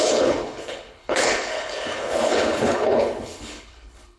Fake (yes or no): yes